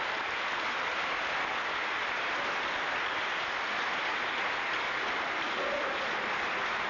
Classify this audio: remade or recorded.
recorded